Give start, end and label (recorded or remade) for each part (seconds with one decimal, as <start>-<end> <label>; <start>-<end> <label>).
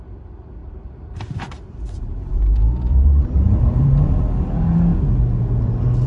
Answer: 0.0-0.6 recorded; 0.6-4.2 remade; 4.2-6.1 recorded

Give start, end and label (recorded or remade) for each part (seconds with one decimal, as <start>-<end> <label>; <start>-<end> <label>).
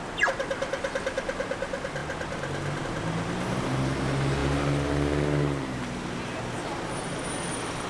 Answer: 0.0-7.9 recorded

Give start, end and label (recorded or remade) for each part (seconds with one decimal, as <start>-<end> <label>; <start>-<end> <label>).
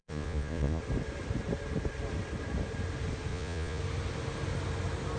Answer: 0.0-0.8 remade; 0.8-3.3 recorded; 3.3-3.8 remade; 3.8-5.2 recorded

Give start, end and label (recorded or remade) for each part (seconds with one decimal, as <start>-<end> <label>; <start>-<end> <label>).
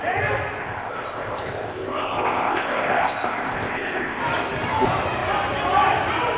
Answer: 0.0-0.6 recorded; 0.6-4.2 remade; 4.2-6.4 recorded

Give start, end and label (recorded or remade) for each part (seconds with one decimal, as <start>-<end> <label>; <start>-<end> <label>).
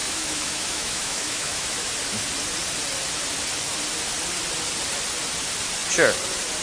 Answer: 0.0-1.9 remade; 1.9-6.6 recorded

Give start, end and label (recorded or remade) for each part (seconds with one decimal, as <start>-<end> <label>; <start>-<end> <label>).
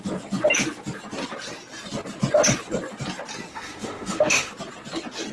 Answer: 0.0-3.5 recorded; 3.5-4.5 remade; 4.5-5.3 recorded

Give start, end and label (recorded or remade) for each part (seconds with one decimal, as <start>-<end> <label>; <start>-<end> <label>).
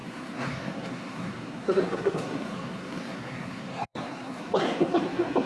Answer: 0.0-5.5 remade